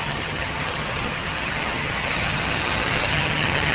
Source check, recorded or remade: remade